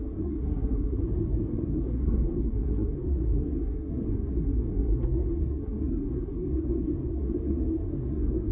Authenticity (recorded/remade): remade